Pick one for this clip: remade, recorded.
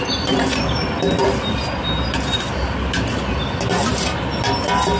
recorded